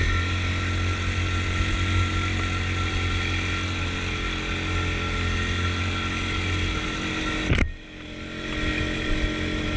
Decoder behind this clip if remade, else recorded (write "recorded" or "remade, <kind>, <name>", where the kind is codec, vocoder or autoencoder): recorded